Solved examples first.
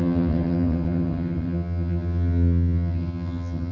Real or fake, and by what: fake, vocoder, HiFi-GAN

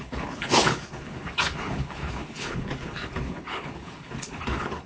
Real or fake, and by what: fake, codec, HILCodec